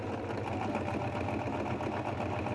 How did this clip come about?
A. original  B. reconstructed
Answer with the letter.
A